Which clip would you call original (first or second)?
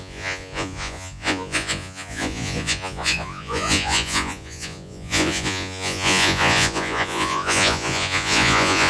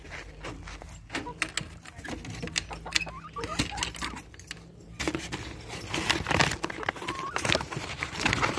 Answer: second